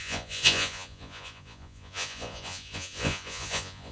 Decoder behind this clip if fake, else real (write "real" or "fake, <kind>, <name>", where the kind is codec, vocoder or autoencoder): fake, vocoder, Vocos